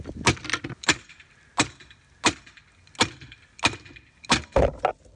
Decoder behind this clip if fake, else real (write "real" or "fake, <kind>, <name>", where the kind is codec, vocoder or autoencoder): real